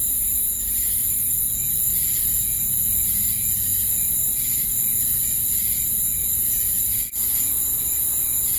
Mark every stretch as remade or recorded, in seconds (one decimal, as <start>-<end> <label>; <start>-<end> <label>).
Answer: 0.0-8.6 recorded